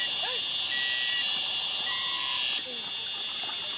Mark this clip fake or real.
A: real